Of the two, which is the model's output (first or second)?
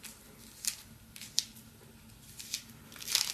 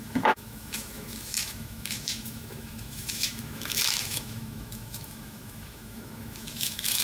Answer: second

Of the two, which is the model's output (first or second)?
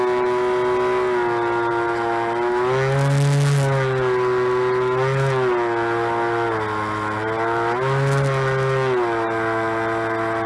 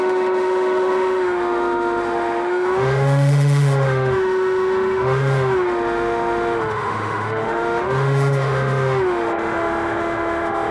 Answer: second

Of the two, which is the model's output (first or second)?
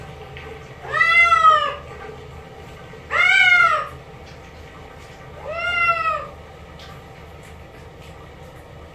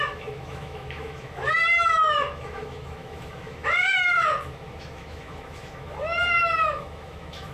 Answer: second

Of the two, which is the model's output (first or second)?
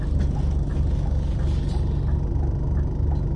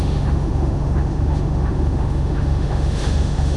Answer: second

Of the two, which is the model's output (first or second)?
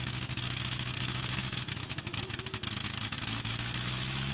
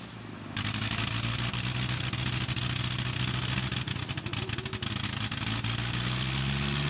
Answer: first